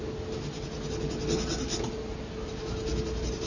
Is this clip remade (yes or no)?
no